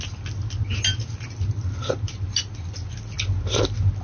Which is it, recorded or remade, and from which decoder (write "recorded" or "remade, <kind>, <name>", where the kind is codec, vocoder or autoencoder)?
recorded